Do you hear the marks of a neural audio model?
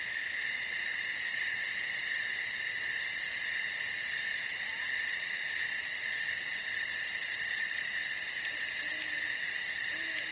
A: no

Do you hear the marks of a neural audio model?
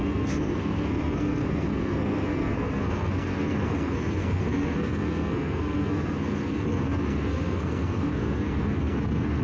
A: yes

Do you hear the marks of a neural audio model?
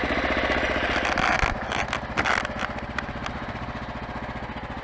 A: no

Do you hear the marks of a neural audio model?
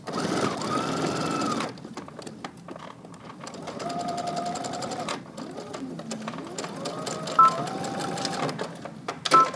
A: no